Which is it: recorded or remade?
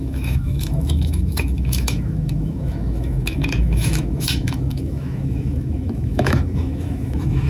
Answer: remade